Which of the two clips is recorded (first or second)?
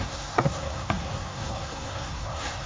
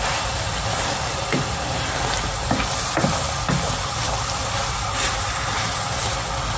second